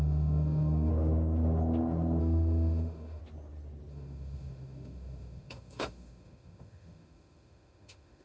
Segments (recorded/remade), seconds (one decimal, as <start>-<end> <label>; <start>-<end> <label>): 0.0-0.9 remade; 0.9-2.2 recorded; 2.2-3.2 remade; 3.2-3.9 recorded; 3.9-8.2 remade